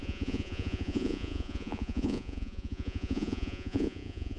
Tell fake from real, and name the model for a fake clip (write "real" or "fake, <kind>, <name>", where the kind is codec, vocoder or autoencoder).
fake, vocoder, Vocos